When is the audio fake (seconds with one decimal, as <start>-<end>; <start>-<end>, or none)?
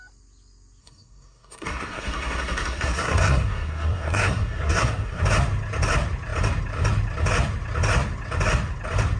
0.8-5.2